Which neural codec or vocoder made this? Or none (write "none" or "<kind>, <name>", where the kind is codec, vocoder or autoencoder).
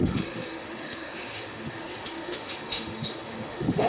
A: autoencoder, DAC-VAE